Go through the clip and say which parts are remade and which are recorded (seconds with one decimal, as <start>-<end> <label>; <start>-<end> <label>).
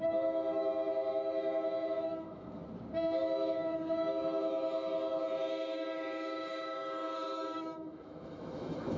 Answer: 0.0-2.6 remade; 2.6-3.2 recorded; 3.2-9.0 remade